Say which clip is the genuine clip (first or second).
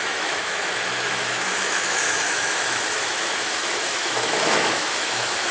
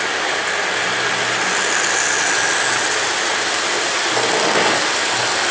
second